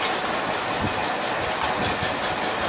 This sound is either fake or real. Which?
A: real